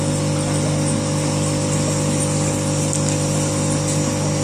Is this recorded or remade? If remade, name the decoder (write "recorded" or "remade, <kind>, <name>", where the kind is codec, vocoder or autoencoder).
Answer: recorded